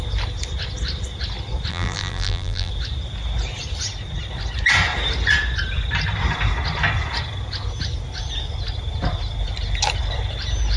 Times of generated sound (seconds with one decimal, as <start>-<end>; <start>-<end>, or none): 1.7-2.7